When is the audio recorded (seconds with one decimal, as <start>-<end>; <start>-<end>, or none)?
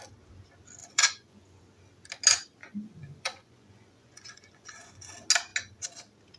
0.0-0.8; 1.6-2.6; 5.1-6.4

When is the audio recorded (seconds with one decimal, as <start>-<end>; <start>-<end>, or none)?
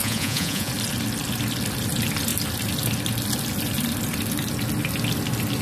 0.7-5.6